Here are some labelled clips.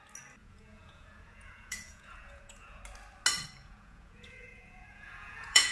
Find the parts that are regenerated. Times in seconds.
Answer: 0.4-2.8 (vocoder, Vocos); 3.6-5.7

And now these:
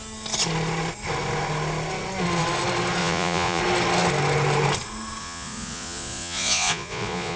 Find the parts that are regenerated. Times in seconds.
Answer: 3.0-3.6 (vocoder, Vocos); 5.2-7.4

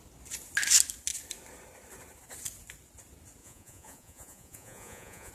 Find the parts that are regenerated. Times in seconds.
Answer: 3.4-5.3 (vocoder, Vocos)